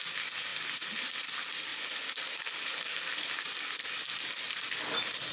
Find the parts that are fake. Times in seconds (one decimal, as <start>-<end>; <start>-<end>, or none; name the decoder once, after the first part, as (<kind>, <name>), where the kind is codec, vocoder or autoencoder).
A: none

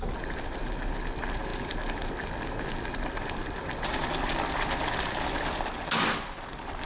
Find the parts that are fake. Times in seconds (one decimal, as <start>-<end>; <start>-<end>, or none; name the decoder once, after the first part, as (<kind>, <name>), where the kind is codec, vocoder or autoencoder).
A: none

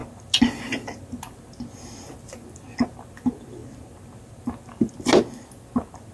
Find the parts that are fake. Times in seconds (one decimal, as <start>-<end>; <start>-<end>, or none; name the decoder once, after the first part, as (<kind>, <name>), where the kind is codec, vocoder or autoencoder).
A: none

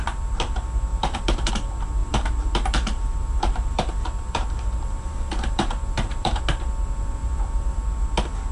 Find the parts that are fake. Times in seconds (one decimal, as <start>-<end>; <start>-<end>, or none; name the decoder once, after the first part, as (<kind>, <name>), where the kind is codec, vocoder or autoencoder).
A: 0.9-1.5 (vocoder, BigVGAN v2); 2.0-6.4; 7.2-7.8

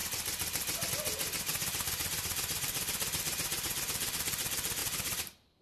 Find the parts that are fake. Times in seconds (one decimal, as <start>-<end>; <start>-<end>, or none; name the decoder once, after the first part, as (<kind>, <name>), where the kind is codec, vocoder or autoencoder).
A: 0.0-0.9 (vocoder, BigVGAN v2); 1.5-3.8; 4.8-5.6

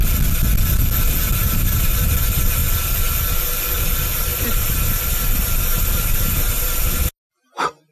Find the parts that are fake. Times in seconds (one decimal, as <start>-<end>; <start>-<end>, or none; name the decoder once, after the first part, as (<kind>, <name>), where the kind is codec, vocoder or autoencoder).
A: 1.4-2.1 (vocoder, BigVGAN v2); 6.1-7.0

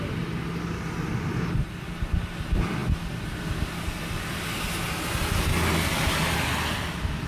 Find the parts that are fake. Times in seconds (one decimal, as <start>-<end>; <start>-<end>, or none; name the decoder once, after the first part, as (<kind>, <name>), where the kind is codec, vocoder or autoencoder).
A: none

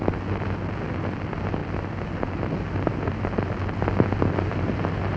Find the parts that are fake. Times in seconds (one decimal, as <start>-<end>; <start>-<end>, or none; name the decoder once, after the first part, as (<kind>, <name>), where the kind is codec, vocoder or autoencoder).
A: 1.6-2.4 (vocoder, BigVGAN v2)